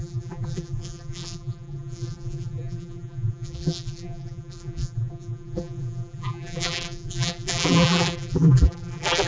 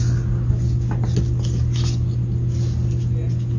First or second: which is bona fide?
second